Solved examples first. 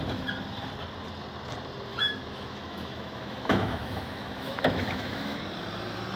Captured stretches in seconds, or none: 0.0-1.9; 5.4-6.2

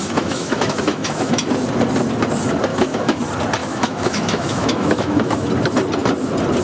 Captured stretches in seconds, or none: 1.5-2.7; 3.2-3.6; 5.5-6.6

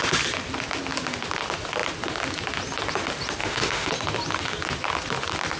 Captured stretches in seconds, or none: 0.0-3.4; 3.9-5.6

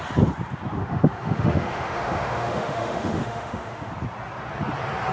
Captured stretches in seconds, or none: 0.0-0.8; 3.9-5.1